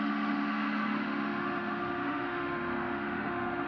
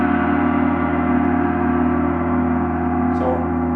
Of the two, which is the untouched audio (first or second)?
second